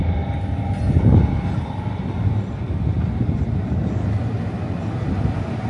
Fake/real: real